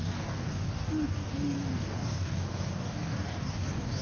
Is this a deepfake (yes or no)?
yes